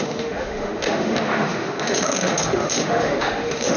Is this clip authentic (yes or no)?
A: no